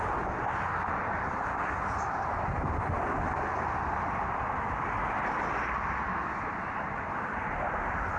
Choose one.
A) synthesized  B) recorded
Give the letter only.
B